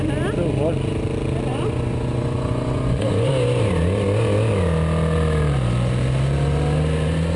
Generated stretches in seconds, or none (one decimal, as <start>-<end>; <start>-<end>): 1.5-3.3